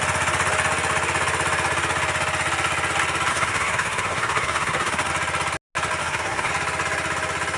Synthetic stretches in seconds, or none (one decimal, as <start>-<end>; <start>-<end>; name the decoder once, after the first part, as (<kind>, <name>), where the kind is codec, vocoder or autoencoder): 3.3-5.1 (codec, SNAC); 6.0-6.5